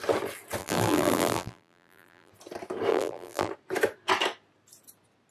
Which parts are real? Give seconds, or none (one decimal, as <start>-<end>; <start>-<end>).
0.0-0.6; 2.3-2.9; 3.5-5.3